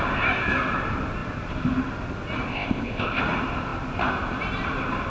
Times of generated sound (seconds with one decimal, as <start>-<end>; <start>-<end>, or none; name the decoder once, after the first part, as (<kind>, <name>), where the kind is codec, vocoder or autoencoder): 2.5-3.2 (codec, ZipCodec)